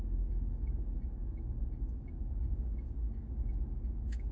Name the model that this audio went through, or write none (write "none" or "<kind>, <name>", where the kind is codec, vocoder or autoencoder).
codec, DAC